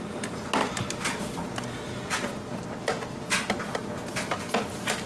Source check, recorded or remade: recorded